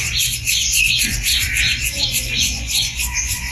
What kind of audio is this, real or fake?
fake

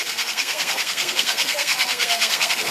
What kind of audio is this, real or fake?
fake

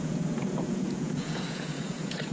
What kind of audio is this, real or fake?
fake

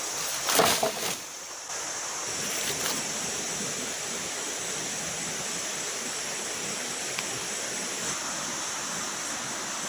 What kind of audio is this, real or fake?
real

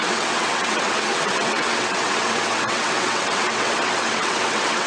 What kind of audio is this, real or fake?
fake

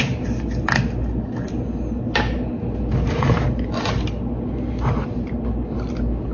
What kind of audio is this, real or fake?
real